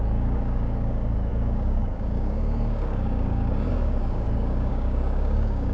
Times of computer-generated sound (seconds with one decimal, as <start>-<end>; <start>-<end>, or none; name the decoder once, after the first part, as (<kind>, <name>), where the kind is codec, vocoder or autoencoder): 0.0-5.7 (codec, DAC)